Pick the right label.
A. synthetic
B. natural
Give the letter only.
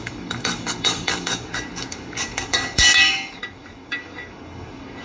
A